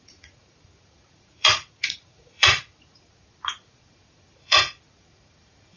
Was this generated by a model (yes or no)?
yes